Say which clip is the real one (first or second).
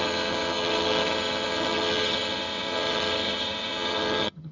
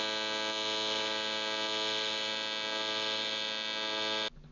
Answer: second